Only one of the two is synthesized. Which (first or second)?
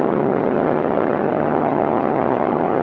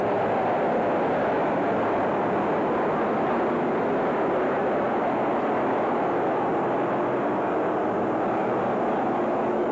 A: first